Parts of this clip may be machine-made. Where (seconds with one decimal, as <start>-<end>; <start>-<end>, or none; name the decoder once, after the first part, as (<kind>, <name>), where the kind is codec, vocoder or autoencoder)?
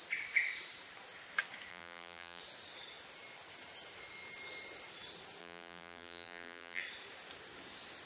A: 1.7-2.4 (vocoder, BigVGAN v2); 5.4-6.8